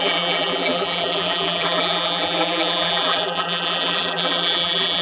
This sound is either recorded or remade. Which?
remade